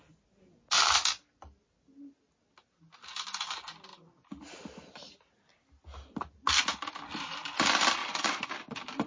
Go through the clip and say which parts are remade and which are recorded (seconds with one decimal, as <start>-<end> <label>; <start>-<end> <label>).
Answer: 0.0-8.0 recorded; 8.0-8.5 remade; 8.5-9.1 recorded